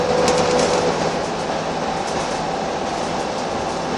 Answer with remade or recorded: recorded